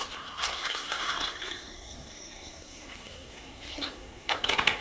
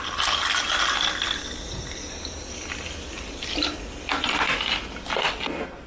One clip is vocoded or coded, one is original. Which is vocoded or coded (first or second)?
first